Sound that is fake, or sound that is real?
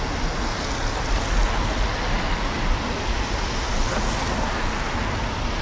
real